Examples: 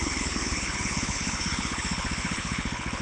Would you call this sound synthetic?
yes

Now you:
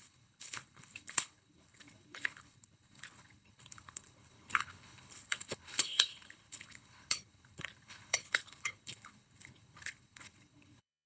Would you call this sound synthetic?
yes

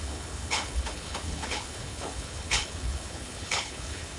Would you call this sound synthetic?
yes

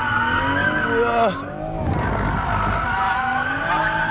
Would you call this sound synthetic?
no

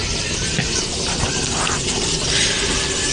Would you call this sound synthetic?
no